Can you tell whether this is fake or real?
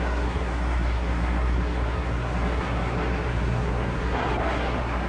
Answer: fake